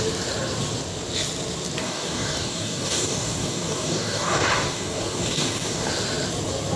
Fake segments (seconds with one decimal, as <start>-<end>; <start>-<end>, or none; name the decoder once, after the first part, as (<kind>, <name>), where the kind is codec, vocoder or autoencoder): 1.8-5.9 (codec, DAC)